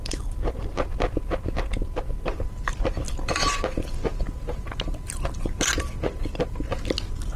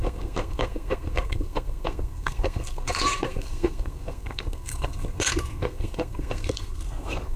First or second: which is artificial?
second